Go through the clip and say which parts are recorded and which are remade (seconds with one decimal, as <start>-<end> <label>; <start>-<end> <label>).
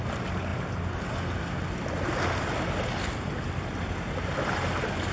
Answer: 0.0-5.1 recorded